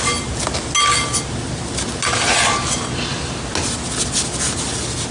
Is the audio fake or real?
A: real